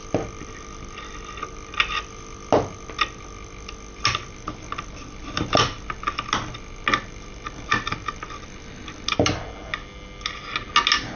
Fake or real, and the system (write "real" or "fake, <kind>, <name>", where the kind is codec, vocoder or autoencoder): real